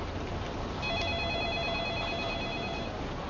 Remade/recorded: recorded